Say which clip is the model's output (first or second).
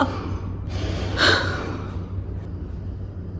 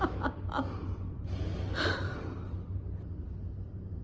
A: second